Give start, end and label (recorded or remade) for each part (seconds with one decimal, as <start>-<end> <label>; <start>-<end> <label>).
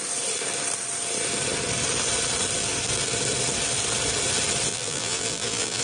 0.0-4.7 recorded; 4.7-5.8 remade